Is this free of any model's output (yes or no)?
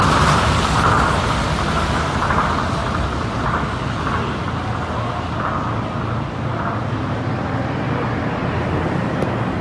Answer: yes